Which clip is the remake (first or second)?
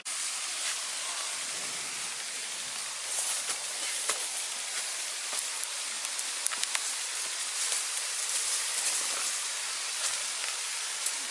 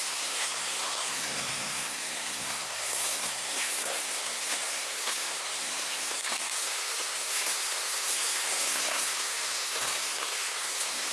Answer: second